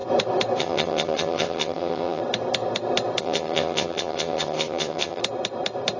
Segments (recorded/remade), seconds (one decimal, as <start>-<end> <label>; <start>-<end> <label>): 0.0-0.6 recorded; 0.6-2.2 remade; 2.2-3.2 recorded; 3.2-5.2 remade; 5.2-6.0 recorded